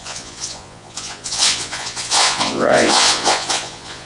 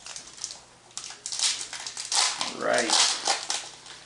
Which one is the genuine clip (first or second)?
second